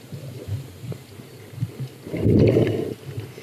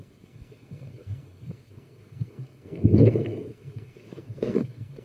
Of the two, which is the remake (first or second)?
second